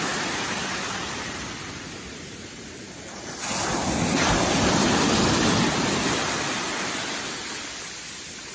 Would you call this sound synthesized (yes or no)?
no